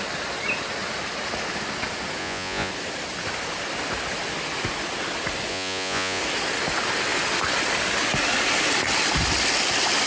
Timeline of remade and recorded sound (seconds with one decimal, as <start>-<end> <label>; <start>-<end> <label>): 0.0-2.2 recorded; 2.2-2.7 remade; 2.7-5.5 recorded; 5.5-6.2 remade; 6.2-10.1 recorded